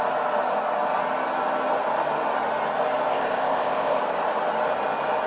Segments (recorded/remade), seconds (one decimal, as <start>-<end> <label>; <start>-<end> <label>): 0.0-3.1 recorded; 3.1-4.0 remade; 4.0-5.3 recorded